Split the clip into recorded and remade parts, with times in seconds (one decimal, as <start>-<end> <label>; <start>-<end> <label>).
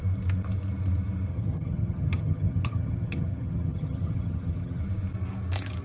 0.0-1.3 recorded; 1.3-4.8 remade; 4.8-5.8 recorded